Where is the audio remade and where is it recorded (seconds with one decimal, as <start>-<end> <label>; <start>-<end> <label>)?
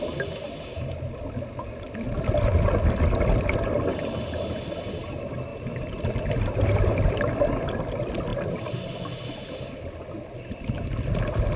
0.0-11.6 recorded